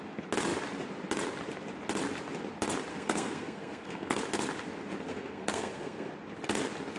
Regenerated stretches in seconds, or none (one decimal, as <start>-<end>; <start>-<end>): 2.9-4.2; 5.1-6.1